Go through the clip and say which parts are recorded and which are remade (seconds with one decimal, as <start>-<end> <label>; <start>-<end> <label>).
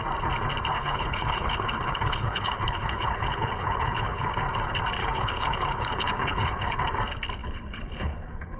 0.0-0.7 recorded; 0.7-4.3 remade; 4.3-5.0 recorded; 5.0-6.8 remade; 6.8-7.4 recorded; 7.4-8.6 remade